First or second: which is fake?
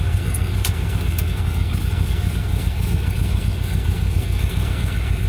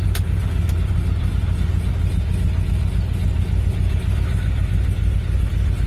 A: first